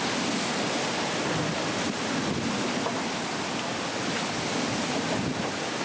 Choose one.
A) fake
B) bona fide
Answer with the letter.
B